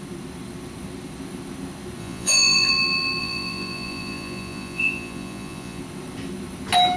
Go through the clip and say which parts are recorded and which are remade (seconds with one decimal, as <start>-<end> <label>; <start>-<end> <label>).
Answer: 0.0-2.0 recorded; 2.0-2.7 remade; 2.7-3.2 recorded; 3.2-5.8 remade; 5.8-7.0 recorded